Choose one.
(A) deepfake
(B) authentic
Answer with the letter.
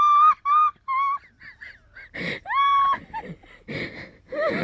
B